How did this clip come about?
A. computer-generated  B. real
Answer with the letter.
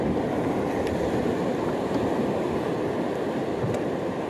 B